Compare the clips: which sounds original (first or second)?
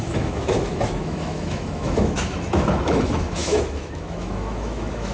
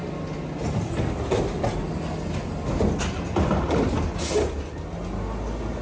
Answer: second